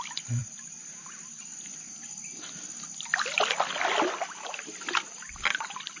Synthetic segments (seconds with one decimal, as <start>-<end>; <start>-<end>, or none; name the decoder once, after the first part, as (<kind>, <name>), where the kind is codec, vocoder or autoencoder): none